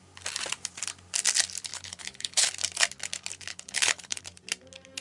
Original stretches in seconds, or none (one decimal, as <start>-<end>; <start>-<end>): 0.0-1.7; 2.5-3.5; 4.2-5.0